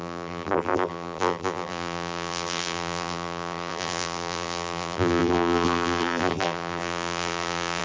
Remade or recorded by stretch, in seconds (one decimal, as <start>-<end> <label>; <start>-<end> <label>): 0.0-7.8 remade